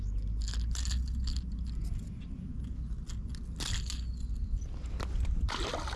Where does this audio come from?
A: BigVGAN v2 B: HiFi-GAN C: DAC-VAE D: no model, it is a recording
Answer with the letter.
D